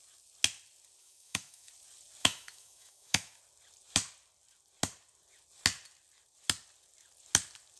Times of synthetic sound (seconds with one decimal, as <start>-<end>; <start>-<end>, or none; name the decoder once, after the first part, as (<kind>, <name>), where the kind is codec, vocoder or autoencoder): 1.0-1.7 (autoencoder, DAC-VAE); 2.2-3.4